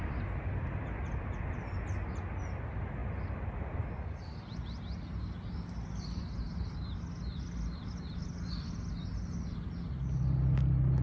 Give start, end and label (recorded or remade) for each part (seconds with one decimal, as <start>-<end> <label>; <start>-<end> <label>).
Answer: 0.0-3.0 recorded; 3.0-4.0 remade; 4.0-11.0 recorded